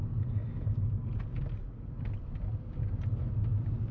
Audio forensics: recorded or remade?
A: recorded